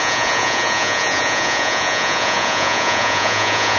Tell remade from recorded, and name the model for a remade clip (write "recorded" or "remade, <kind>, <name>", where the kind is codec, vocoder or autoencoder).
remade, vocoder, Vocos